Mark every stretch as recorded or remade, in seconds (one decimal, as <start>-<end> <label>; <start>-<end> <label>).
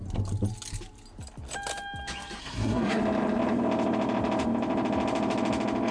0.0-2.4 recorded; 2.4-3.0 remade; 3.0-5.9 recorded